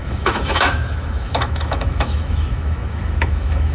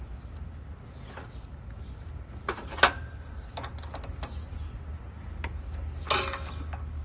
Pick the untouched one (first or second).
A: second